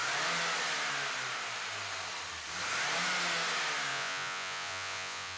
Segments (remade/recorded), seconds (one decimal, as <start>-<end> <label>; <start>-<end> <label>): 0.0-3.9 recorded; 3.9-5.4 remade